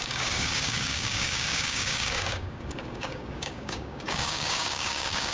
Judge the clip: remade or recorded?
remade